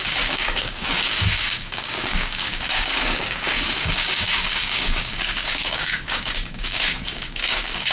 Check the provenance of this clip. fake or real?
fake